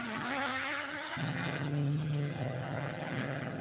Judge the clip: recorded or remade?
remade